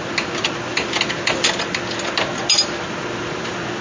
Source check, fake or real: real